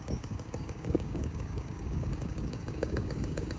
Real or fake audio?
fake